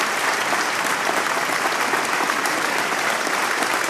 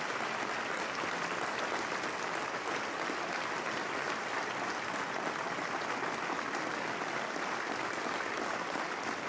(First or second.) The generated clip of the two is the first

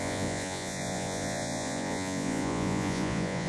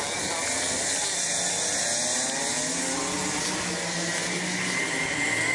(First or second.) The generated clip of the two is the first